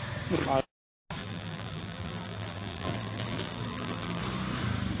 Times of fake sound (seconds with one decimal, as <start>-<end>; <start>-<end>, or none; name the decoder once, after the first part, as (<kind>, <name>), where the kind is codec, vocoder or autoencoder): 1.2-4.2 (vocoder, BigVGAN v2)